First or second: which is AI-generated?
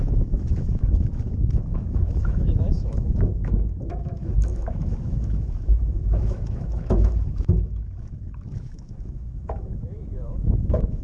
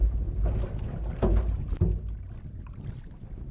first